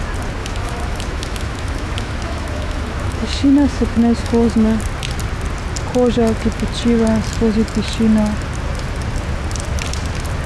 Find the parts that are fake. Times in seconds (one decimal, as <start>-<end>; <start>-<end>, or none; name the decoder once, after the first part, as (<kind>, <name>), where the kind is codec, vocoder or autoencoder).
0.4-4.8 (autoencoder, DAC-VAE)